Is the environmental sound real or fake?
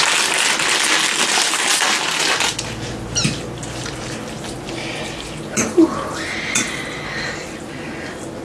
real